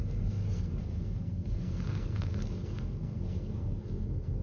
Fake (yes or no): yes